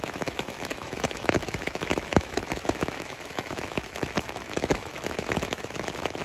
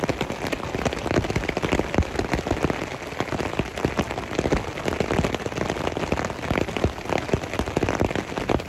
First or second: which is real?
second